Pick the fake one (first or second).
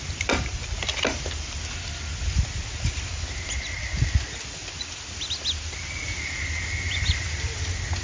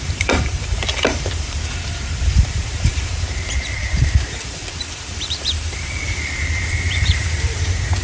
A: second